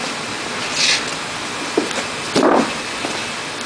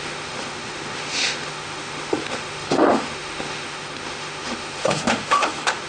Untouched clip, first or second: first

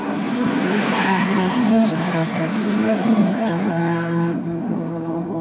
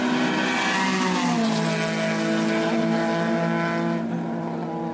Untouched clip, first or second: second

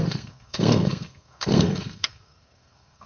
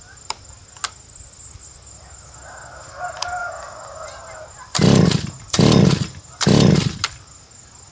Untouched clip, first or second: second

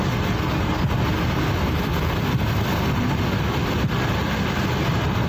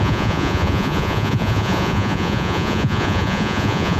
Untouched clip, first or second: first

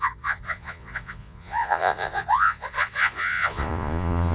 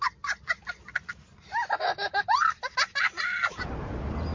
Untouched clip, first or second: second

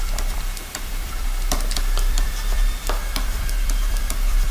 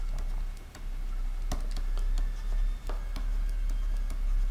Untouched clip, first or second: second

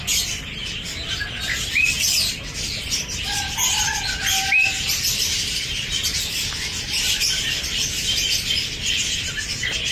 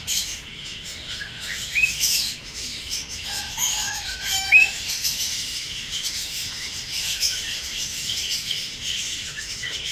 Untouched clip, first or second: first